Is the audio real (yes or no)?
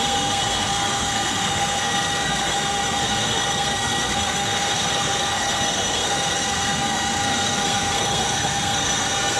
no